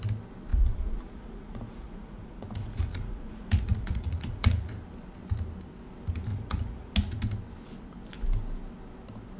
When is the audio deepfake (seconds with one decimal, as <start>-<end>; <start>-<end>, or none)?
0.5-4.7; 6.3-6.9